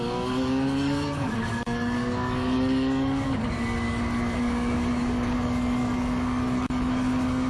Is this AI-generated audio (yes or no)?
yes